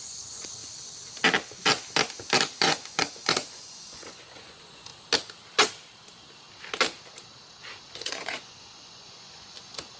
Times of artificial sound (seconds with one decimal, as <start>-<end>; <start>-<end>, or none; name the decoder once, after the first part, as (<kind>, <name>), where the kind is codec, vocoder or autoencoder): 0.0-0.6 (vocoder, Vocos); 2.4-4.9; 7.9-10.0